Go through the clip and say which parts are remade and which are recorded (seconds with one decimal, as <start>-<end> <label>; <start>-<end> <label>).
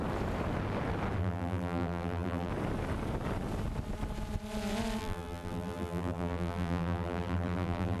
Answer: 0.0-1.2 recorded; 1.2-2.5 remade; 2.5-5.0 recorded; 5.0-8.0 remade